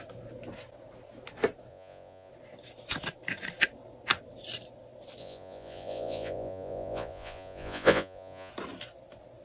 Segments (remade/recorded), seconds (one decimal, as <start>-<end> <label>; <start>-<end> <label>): 0.0-1.7 recorded; 1.7-2.3 remade; 2.3-5.2 recorded; 5.2-8.5 remade; 8.5-9.4 recorded